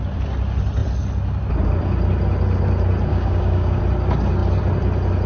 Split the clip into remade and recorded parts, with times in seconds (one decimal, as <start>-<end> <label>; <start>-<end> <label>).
0.0-3.1 recorded; 3.1-3.8 remade; 3.8-5.3 recorded